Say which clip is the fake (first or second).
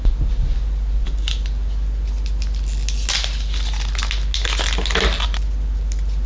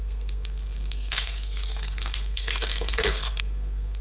second